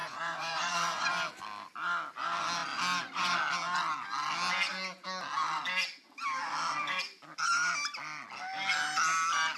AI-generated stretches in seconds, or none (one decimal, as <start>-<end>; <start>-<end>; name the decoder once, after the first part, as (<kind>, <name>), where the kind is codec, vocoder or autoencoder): 0.0-1.1 (vocoder, Vocos)